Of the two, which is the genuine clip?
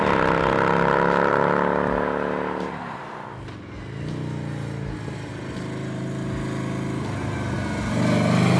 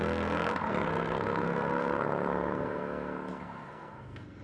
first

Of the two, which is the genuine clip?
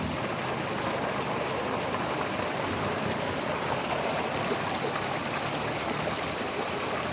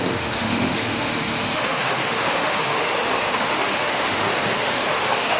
first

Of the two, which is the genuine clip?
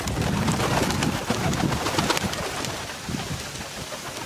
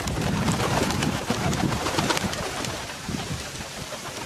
first